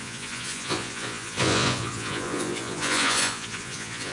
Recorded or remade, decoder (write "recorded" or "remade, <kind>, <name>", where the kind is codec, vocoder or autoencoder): remade, vocoder, Vocos